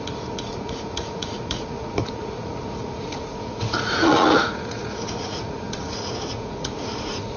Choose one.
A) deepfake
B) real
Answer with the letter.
A